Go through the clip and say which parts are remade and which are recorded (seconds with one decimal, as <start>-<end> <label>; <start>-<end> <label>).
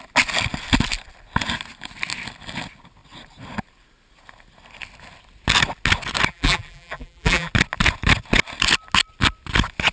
0.0-6.3 recorded; 6.3-7.5 remade; 7.5-9.9 recorded